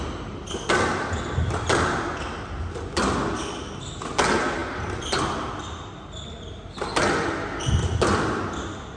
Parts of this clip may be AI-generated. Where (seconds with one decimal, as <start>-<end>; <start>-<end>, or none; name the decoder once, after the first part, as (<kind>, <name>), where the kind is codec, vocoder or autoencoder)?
4.6-5.1 (vocoder, BigVGAN v2)